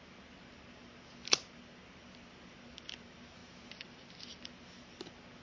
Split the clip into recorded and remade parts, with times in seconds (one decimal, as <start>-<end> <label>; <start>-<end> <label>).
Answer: 0.0-5.4 recorded